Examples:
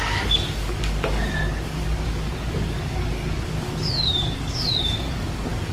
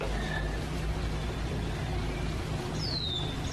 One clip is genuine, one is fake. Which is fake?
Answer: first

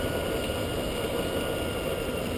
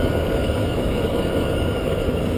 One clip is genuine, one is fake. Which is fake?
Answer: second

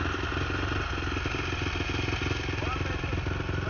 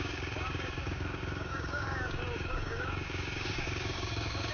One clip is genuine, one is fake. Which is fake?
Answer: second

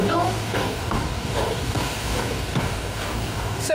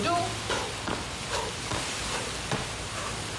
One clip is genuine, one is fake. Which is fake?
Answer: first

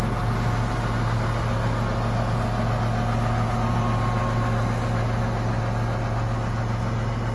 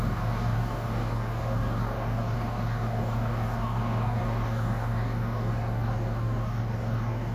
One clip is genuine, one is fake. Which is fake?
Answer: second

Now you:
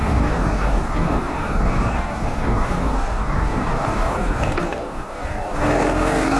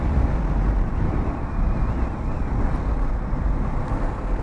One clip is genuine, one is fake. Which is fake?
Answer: first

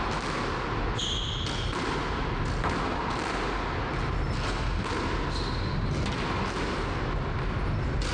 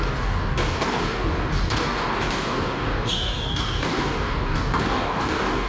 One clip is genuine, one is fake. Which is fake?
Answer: second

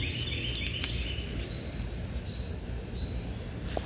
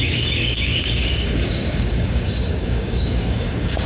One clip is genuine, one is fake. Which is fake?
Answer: second